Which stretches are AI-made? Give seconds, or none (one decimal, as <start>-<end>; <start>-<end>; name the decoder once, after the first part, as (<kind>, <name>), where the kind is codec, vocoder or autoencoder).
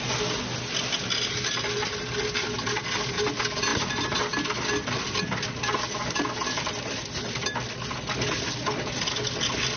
none